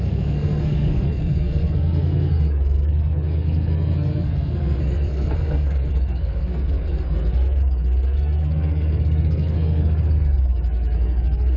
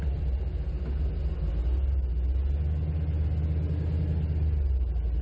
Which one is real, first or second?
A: second